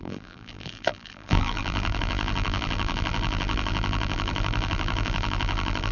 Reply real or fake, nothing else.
fake